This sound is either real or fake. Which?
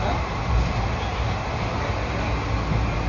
real